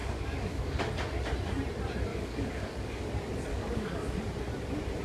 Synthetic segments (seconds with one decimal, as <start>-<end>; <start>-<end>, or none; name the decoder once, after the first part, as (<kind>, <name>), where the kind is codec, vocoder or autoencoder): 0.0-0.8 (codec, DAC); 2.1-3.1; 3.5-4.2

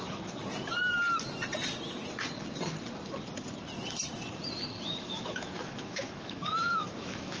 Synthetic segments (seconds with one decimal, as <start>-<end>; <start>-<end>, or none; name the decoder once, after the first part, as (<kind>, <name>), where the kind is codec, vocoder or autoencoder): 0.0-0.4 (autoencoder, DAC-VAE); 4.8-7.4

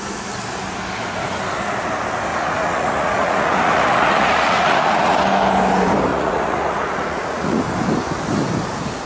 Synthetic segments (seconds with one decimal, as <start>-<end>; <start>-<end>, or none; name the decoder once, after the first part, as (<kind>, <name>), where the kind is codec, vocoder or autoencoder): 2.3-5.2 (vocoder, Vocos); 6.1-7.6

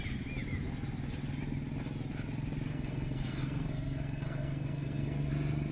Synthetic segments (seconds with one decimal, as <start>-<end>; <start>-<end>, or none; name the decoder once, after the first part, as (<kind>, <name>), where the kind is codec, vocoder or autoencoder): 2.7-5.3 (codec, SNAC)

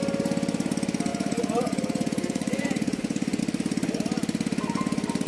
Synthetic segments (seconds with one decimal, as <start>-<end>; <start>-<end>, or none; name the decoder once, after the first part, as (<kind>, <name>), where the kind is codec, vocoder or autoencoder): 1.1-3.4 (vocoder, Vocos)

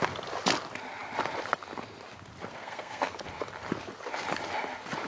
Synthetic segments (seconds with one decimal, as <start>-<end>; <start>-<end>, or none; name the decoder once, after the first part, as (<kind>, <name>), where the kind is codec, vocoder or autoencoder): 2.5-3.2 (codec, SNAC)

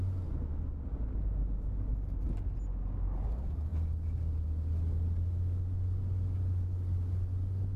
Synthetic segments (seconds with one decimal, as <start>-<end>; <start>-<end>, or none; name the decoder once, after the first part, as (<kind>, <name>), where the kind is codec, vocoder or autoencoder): none

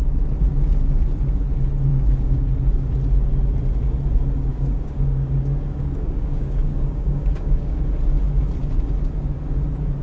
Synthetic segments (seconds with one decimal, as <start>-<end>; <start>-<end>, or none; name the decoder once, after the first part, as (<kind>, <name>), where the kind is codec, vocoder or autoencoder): 1.9-2.4 (codec, DAC); 4.5-7.8